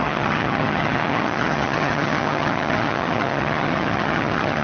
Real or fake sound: fake